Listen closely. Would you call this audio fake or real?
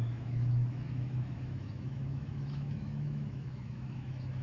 fake